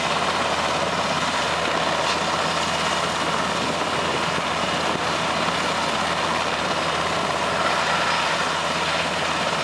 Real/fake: real